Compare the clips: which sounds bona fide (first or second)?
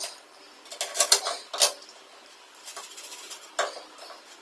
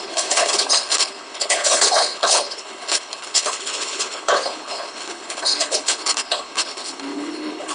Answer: first